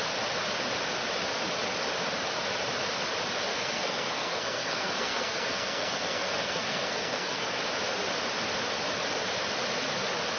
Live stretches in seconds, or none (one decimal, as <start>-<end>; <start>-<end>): 0.0-3.5; 7.6-10.4